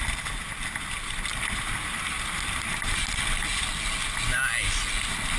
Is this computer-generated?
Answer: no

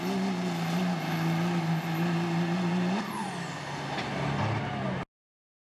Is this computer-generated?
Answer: no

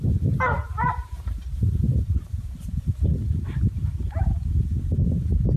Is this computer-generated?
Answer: yes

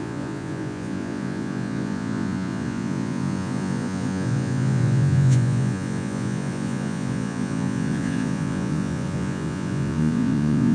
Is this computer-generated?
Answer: yes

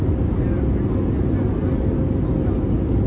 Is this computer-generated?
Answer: no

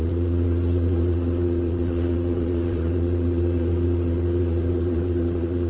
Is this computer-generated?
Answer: yes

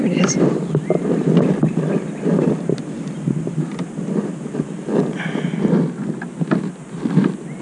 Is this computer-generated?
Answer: no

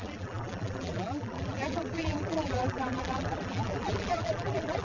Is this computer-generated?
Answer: yes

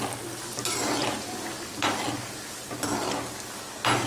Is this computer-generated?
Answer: no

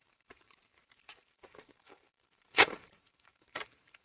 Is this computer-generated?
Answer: yes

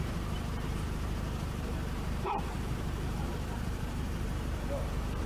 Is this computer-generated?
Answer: yes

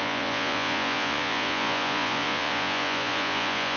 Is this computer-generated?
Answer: yes